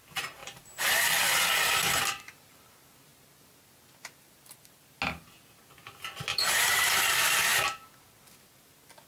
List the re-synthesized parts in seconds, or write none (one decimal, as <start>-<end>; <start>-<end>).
0.4-1.0; 6.3-6.9